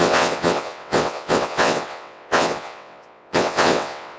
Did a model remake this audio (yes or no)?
yes